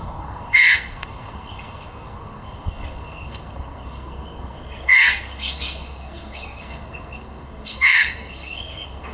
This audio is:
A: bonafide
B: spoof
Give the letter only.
B